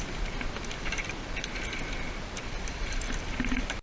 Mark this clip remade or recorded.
recorded